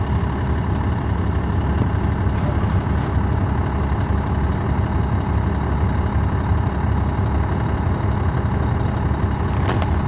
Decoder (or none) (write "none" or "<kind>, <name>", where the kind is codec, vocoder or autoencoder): none